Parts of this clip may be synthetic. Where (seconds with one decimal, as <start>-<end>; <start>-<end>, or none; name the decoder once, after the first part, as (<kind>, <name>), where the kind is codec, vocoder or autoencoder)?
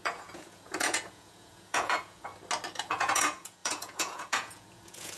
0.0-2.3 (vocoder, Vocos); 2.8-5.2